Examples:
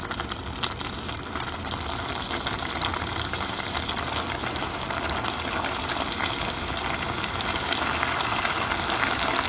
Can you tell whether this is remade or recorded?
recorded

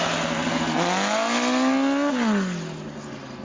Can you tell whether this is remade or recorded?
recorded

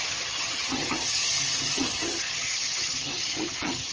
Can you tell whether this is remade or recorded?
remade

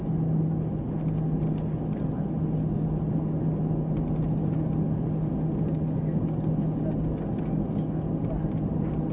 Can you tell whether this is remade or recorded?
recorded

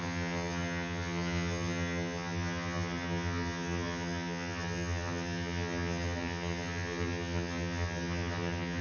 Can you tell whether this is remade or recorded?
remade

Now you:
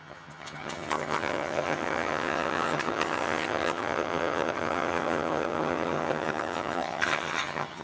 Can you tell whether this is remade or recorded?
remade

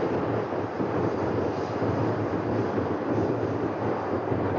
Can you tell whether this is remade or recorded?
recorded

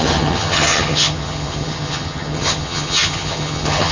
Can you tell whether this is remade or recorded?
remade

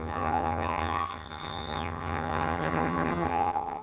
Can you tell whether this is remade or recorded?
remade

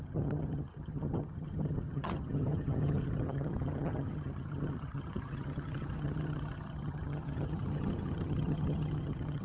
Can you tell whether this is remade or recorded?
remade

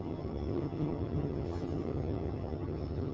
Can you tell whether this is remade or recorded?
remade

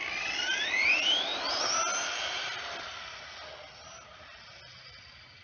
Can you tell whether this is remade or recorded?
recorded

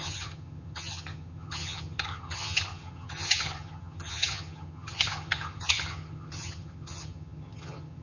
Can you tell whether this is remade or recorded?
remade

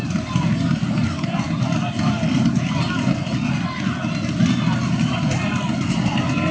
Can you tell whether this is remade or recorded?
recorded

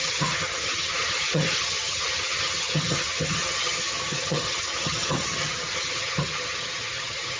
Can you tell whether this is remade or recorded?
remade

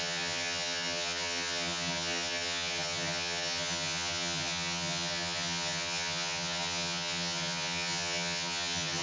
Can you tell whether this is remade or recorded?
remade